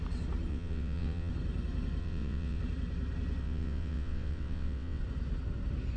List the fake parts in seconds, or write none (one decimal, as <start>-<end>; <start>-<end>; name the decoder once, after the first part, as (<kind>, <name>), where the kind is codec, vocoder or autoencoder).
0.5-1.3 (vocoder, WaveNeXt); 2.0-2.6; 3.4-5.0